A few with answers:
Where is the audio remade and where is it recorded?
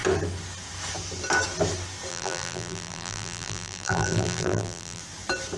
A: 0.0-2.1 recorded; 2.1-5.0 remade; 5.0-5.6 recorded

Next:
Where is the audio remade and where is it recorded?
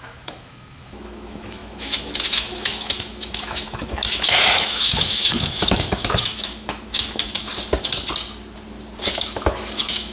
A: 0.0-7.5 remade; 7.5-9.1 recorded; 9.1-10.1 remade